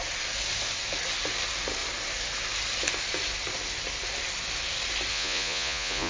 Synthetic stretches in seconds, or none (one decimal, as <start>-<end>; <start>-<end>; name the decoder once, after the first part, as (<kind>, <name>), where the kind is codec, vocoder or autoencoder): 5.1-6.1 (vocoder, Vocos)